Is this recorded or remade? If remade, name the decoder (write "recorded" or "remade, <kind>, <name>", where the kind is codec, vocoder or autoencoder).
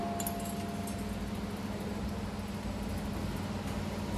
recorded